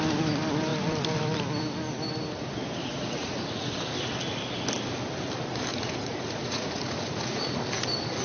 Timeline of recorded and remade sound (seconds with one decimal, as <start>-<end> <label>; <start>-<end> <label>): 0.0-2.8 recorded; 2.8-3.8 remade; 3.8-5.7 recorded; 5.7-7.6 remade; 7.6-8.2 recorded